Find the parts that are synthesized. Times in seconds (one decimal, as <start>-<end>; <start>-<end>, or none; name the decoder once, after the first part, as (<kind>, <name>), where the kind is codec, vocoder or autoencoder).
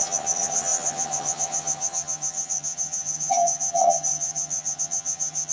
0.0-5.5 (vocoder, HiFi-GAN)